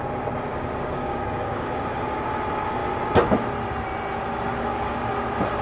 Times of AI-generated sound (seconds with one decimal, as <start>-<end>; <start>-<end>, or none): 0.5-2.0; 4.5-5.1